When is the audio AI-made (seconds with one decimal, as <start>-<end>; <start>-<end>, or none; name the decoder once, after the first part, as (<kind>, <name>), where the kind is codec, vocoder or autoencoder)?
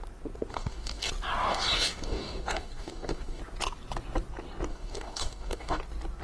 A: 0.5-1.1 (codec, DAC); 1.5-3.4; 4.7-5.8